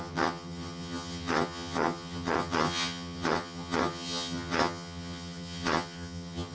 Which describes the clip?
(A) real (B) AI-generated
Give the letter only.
B